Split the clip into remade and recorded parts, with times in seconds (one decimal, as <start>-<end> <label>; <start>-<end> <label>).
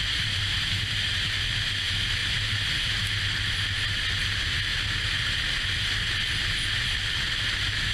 0.0-7.9 recorded